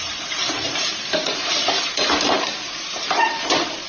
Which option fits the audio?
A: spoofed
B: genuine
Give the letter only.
A